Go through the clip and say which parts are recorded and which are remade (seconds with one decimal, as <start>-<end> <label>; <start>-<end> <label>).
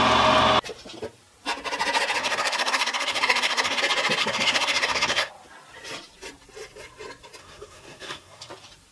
0.0-2.2 recorded; 2.2-3.8 remade; 3.8-4.2 recorded; 4.2-5.3 remade; 5.3-7.4 recorded; 7.4-8.5 remade; 8.5-8.9 recorded